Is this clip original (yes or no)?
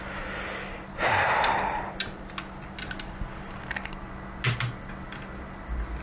yes